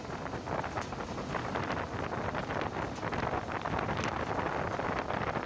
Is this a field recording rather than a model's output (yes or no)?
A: yes